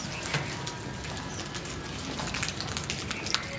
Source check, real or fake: real